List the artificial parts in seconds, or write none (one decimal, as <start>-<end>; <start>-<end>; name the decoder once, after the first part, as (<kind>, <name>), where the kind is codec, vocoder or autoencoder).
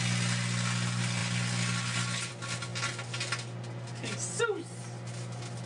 none